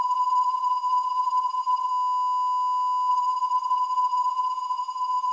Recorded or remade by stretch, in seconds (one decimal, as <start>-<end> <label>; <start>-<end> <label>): 0.0-1.9 remade; 1.9-3.1 recorded; 3.1-5.3 remade